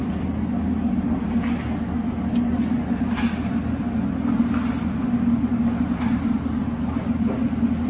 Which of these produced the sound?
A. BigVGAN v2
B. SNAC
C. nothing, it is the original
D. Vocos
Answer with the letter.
C